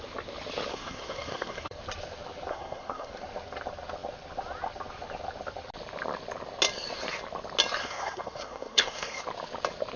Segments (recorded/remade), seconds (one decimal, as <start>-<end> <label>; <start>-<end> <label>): 0.0-0.7 recorded; 0.7-1.8 remade; 1.8-2.5 recorded; 2.5-3.1 remade; 3.1-7.8 recorded; 7.8-9.2 remade; 9.2-10.0 recorded